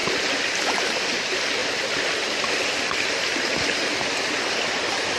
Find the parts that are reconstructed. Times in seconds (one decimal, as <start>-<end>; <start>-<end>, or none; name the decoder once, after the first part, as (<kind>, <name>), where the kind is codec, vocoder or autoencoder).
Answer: none